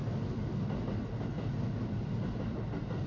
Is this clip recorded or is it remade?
recorded